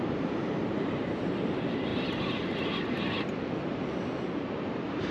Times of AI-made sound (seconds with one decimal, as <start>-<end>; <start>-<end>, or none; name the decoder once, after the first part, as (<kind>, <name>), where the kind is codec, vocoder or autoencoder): 1.9-5.1 (vocoder, BigVGAN v2)